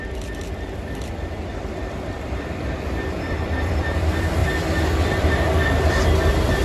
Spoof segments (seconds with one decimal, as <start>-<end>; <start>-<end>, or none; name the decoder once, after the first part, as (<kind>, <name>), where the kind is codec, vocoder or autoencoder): 0.0-4.4 (vocoder, BigVGAN v2); 5.2-6.6